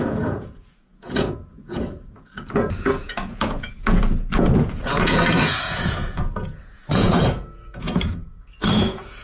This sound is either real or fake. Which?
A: fake